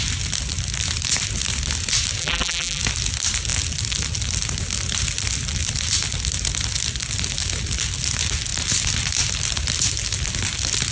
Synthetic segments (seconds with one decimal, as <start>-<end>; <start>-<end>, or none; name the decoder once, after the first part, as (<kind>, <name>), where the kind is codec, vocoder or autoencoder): 2.2-2.8 (vocoder, BigVGAN v2)